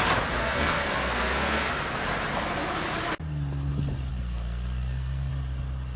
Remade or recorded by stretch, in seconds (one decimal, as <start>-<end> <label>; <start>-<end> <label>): 0.0-0.4 recorded; 0.4-1.7 remade; 1.7-4.1 recorded; 4.1-5.3 remade; 5.3-6.0 recorded